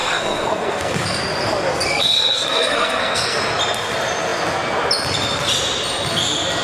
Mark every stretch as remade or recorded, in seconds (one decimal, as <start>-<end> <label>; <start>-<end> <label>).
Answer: 0.0-1.2 remade; 1.2-1.7 recorded; 1.7-3.4 remade; 3.4-6.6 recorded